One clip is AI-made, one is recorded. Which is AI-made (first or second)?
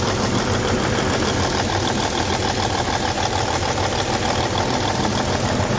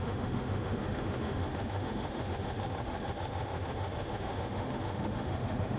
second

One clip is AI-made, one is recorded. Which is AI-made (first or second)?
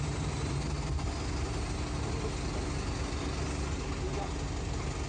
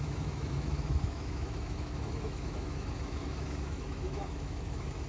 second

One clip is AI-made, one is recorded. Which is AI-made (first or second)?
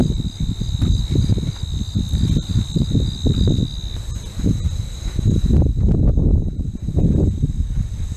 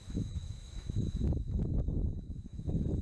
second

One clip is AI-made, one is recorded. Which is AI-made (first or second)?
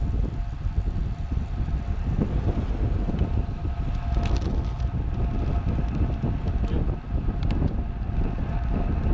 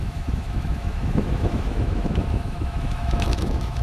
second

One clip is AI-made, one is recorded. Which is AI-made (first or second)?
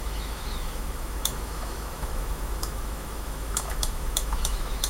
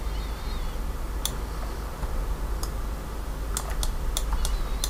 first